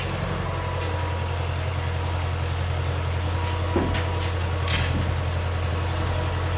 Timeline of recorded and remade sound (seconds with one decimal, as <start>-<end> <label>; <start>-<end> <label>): 0.0-6.6 recorded